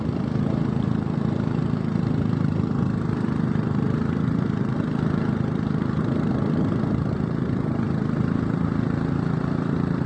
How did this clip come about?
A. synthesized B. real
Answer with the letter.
A